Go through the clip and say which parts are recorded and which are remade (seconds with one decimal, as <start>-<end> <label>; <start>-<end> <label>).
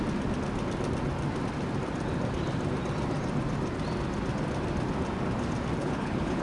0.0-5.8 recorded; 5.8-6.4 remade